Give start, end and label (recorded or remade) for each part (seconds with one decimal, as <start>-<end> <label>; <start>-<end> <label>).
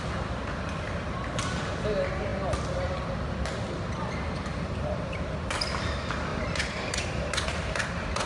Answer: 0.0-4.5 recorded; 4.5-5.1 remade; 5.1-6.3 recorded; 6.3-8.3 remade